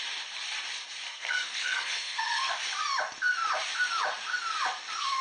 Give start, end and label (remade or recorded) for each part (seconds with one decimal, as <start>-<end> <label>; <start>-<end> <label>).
0.0-1.1 recorded; 1.1-2.5 remade; 2.5-5.2 recorded

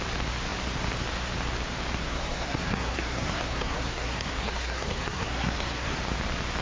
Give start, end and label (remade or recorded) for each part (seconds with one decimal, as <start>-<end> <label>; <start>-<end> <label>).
0.0-2.0 recorded; 2.0-6.0 remade; 6.0-6.6 recorded